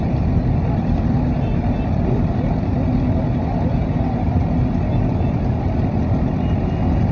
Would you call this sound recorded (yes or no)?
yes